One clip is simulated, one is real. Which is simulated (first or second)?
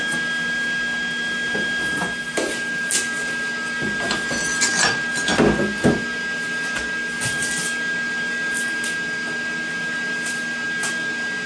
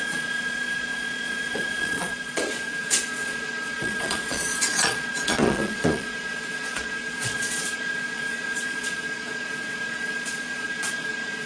second